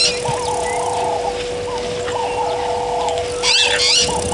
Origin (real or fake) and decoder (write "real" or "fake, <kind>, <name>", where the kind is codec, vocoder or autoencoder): real